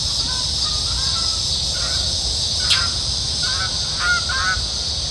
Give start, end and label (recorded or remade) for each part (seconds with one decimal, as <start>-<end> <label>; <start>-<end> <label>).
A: 0.0-5.1 recorded